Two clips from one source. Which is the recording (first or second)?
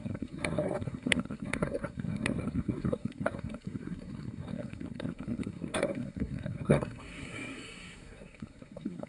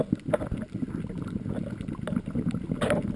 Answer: second